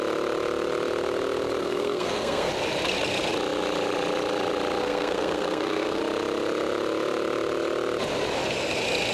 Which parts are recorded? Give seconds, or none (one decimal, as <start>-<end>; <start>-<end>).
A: 0.0-1.6; 2.5-4.8; 6.0-9.1